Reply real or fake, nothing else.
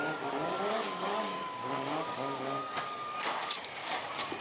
fake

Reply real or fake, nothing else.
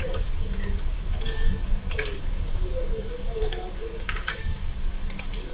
fake